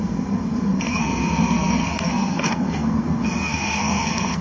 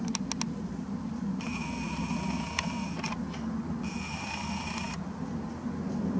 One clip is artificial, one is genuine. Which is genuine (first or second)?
second